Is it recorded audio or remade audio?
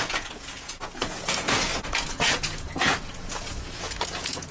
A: remade